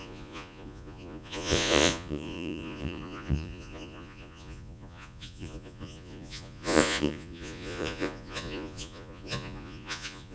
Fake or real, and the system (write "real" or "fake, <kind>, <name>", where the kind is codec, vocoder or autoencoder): fake, vocoder, Vocos